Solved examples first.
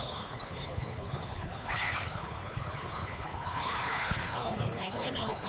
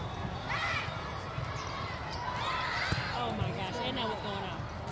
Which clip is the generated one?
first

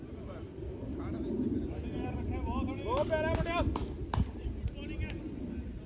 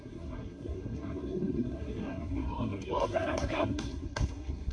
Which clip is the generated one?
second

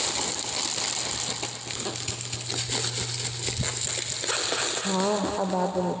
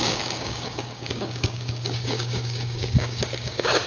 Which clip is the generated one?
second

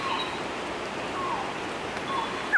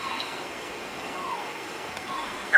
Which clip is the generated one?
second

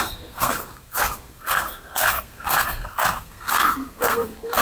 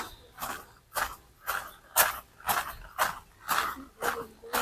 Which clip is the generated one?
first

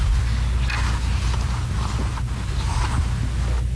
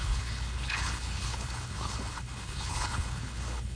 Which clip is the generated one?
second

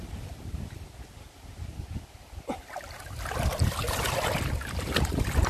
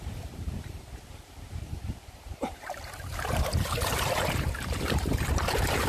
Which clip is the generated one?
second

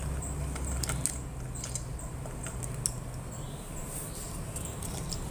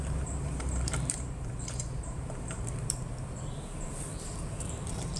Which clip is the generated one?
second